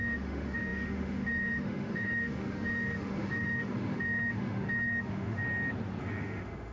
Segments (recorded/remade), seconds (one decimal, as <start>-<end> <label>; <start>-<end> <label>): 0.0-5.4 remade; 5.4-6.0 recorded; 6.0-6.7 remade

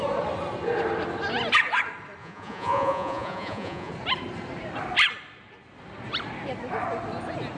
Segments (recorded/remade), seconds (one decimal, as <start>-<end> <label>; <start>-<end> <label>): 0.0-2.2 recorded; 2.2-3.9 remade; 3.9-7.6 recorded

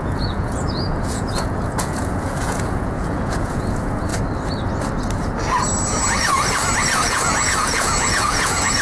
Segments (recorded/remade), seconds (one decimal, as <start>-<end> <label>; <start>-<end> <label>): 0.0-4.1 remade; 4.1-7.0 recorded; 7.0-8.8 remade

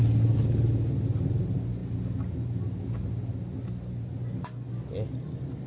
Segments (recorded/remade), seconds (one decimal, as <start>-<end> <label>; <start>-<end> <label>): 0.0-5.7 recorded

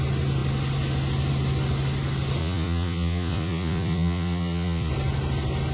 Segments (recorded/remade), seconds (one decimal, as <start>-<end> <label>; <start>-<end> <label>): 0.0-2.4 recorded; 2.4-4.9 remade; 4.9-5.7 recorded

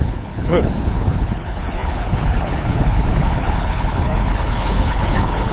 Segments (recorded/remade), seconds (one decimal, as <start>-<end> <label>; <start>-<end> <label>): 0.0-5.5 remade